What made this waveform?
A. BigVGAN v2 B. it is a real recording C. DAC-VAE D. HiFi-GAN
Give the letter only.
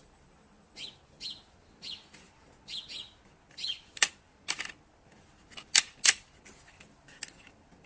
B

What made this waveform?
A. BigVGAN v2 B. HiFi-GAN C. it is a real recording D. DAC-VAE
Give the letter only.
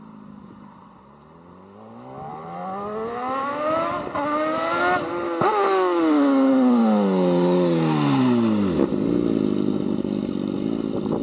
C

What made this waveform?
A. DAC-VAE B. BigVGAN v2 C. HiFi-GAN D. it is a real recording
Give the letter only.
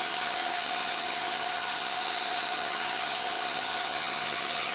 C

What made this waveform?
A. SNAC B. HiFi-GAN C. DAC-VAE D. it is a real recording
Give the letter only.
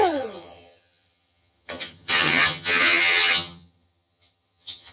B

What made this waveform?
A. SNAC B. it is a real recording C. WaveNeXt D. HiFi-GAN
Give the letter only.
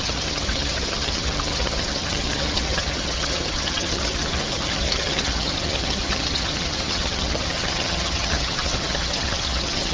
D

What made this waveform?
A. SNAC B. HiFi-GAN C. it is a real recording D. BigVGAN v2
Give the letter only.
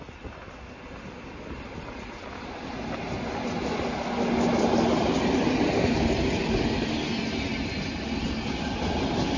C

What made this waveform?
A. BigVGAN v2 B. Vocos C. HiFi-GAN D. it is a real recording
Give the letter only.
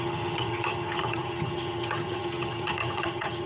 C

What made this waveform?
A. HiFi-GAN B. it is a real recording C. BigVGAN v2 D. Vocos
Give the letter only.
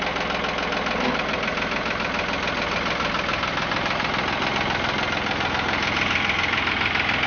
B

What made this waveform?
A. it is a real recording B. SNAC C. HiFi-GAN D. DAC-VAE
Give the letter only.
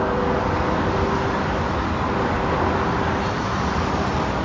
A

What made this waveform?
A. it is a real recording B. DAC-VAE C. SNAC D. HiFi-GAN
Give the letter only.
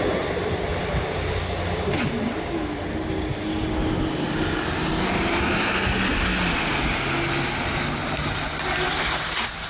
A